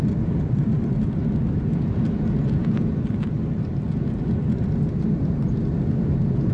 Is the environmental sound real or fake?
real